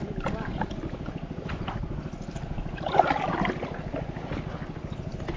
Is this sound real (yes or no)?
yes